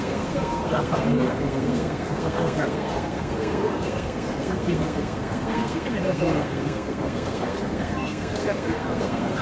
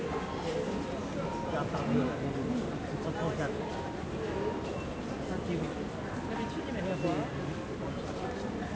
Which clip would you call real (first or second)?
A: second